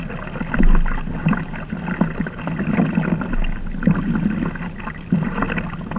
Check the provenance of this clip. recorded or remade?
recorded